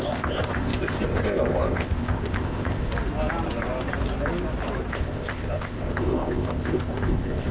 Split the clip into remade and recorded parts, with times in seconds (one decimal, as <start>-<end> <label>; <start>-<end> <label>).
0.0-2.9 remade; 2.9-4.9 recorded; 4.9-7.5 remade